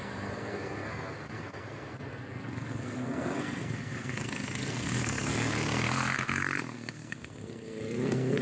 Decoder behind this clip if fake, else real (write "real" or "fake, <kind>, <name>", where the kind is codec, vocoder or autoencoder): fake, codec, SNAC